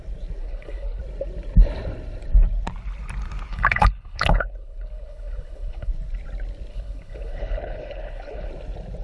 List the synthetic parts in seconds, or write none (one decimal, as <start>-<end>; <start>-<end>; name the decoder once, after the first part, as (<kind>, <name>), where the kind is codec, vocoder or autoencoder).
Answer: 0.4-1.0 (codec, HILCodec); 3.5-5.9; 6.7-8.5